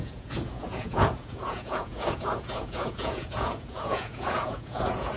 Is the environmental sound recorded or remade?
remade